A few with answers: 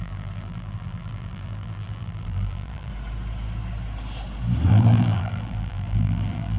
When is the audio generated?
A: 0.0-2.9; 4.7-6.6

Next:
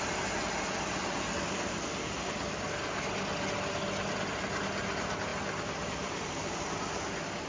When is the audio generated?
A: none

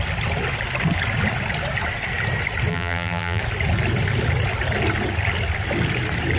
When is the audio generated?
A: 2.7-3.4

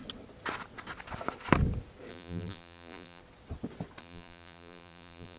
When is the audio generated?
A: 2.1-3.2; 4.0-5.4